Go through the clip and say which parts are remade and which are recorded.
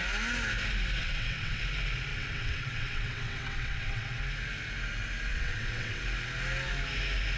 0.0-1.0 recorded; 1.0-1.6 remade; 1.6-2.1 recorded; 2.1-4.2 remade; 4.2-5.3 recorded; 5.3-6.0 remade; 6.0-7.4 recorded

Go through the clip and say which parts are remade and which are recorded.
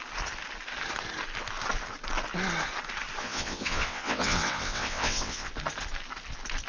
0.0-3.2 recorded; 3.2-5.5 remade; 5.5-6.7 recorded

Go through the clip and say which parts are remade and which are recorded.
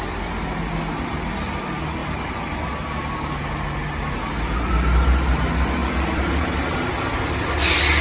0.0-2.0 recorded; 2.0-2.6 remade; 2.6-5.8 recorded; 5.8-6.9 remade; 6.9-8.0 recorded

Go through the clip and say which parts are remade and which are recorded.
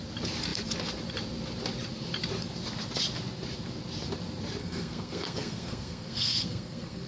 0.0-4.6 recorded; 4.6-7.1 remade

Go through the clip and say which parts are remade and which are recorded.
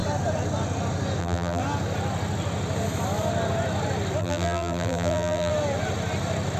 0.0-1.2 recorded; 1.2-1.6 remade; 1.6-4.2 recorded; 4.2-5.5 remade; 5.5-6.6 recorded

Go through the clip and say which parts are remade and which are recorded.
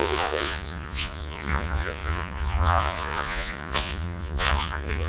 0.0-5.1 remade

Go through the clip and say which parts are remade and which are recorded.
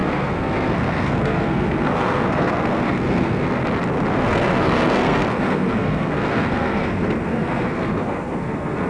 0.0-3.6 remade; 3.6-4.1 recorded; 4.1-8.9 remade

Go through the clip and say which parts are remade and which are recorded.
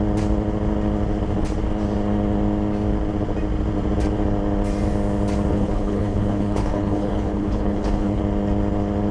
0.0-5.5 recorded; 5.5-8.2 remade; 8.2-9.1 recorded